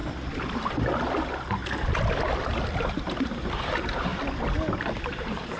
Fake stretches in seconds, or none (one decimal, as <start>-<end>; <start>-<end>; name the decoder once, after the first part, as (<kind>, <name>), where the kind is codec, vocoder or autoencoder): 1.1-1.6 (vocoder, BigVGAN v2); 2.9-4.1; 5.1-5.6